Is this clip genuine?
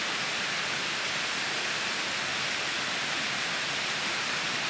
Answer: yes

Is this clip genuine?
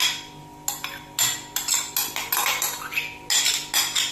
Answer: yes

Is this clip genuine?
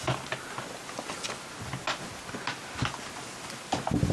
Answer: yes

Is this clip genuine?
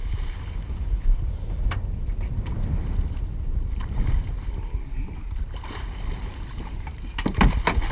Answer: yes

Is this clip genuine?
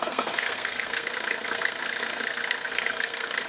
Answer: no